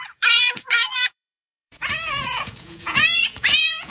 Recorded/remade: remade